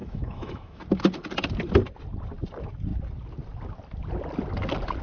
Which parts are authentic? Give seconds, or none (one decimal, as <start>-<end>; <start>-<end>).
0.8-5.0

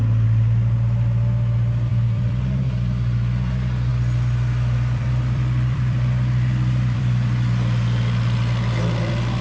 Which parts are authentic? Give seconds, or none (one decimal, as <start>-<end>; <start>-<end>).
0.0-1.9; 2.4-3.9

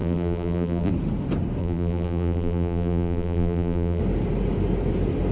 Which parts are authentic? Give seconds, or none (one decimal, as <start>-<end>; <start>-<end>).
0.9-1.6; 4.0-5.3

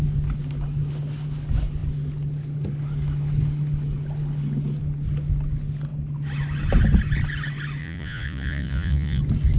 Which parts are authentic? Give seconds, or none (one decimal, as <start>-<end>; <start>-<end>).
0.0-7.8; 9.2-9.6

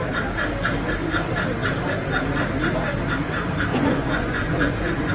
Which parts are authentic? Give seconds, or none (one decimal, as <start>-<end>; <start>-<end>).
0.0-3.7

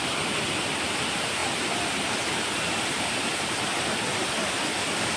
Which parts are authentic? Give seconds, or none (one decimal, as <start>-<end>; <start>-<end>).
0.0-5.2

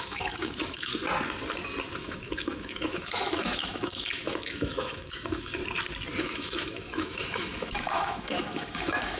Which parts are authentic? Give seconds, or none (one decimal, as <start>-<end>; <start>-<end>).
0.9-2.0; 5.6-6.2